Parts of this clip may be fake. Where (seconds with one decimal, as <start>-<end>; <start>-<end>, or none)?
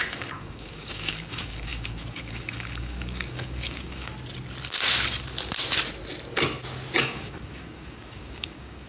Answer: 0.0-4.1; 7.0-8.9